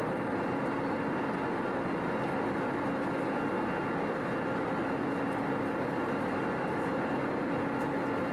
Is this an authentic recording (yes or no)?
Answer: yes